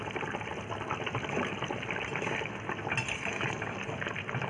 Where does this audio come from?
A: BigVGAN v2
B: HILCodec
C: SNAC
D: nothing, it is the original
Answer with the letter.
D